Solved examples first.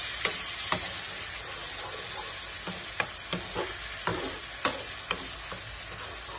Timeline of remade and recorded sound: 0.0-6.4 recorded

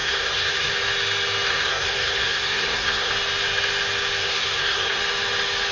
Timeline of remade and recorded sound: 0.0-0.7 remade; 0.7-1.5 recorded; 1.5-3.1 remade; 3.1-4.2 recorded; 4.2-5.0 remade; 5.0-5.7 recorded

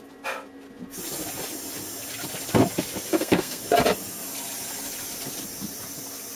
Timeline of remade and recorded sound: 0.0-3.1 recorded; 3.1-3.6 remade; 3.6-6.4 recorded

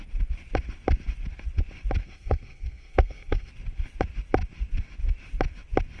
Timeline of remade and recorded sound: 0.0-2.0 recorded; 2.0-3.5 remade; 3.5-6.0 recorded

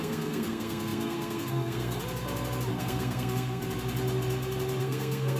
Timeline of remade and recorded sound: 0.0-2.0 remade; 2.0-2.7 recorded; 2.7-3.6 remade; 3.6-4.8 recorded; 4.8-5.4 remade

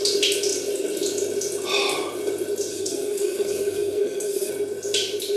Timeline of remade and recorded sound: 0.0-2.7 recorded; 2.7-4.5 remade; 4.5-5.4 recorded

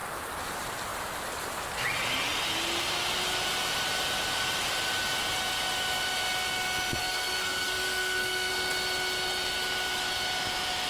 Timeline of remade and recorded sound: 0.0-7.0 recorded; 7.0-8.5 remade; 8.5-10.9 recorded